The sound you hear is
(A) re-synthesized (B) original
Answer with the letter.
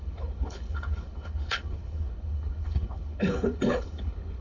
A